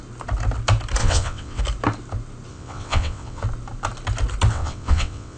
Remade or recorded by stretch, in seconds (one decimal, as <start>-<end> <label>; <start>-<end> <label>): 0.0-1.0 recorded; 1.0-1.6 remade; 1.6-2.5 recorded; 2.5-3.4 remade; 3.4-4.5 recorded; 4.5-5.4 remade